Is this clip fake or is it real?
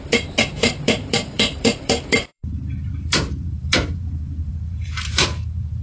fake